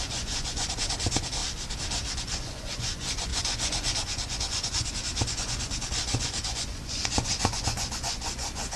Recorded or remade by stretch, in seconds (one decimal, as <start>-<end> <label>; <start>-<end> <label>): 0.0-1.4 remade; 1.4-2.1 recorded; 2.1-8.8 remade